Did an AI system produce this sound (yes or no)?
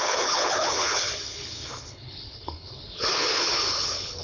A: yes